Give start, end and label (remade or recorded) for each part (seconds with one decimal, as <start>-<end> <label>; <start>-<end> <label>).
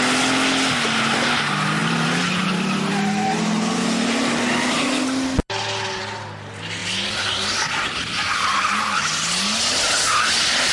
0.0-1.8 recorded; 1.8-2.9 remade; 2.9-10.7 recorded